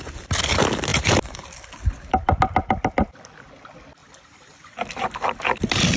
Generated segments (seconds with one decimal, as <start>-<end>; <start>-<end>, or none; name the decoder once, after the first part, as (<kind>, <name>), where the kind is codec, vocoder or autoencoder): 0.9-2.4 (vocoder, BigVGAN v2); 4.0-5.4